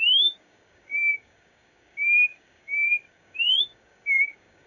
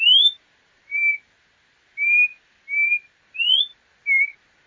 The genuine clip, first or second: second